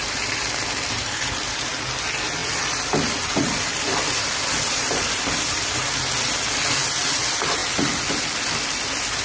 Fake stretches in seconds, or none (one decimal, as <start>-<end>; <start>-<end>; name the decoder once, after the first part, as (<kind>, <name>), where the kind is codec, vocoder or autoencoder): 0.0-1.7 (vocoder, BigVGAN v2); 2.4-5.8